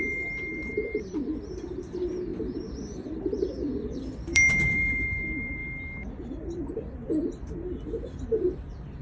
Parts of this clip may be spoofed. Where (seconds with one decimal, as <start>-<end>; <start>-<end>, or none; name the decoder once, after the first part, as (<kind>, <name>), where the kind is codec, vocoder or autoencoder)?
0.0-5.6 (vocoder, BigVGAN v2); 6.7-9.0